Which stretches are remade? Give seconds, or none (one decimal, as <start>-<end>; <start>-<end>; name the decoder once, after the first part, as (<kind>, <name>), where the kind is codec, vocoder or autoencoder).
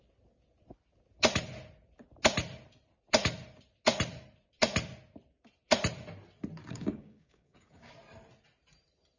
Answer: 6.6-7.9 (codec, DAC)